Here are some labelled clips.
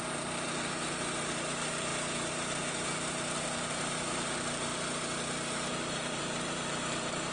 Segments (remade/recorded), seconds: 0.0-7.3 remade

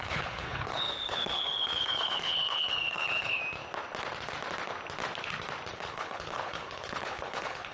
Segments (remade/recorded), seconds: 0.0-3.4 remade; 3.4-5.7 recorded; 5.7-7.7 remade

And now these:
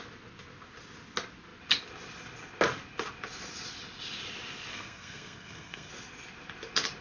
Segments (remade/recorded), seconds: 0.0-4.7 recorded; 4.7-5.9 remade; 5.9-7.0 recorded

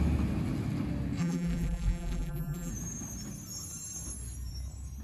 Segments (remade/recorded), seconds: 0.0-1.2 recorded; 1.2-2.7 remade; 2.7-5.0 recorded